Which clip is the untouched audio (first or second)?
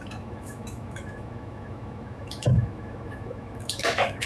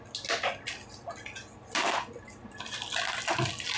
second